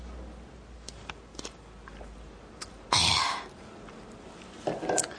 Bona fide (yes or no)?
yes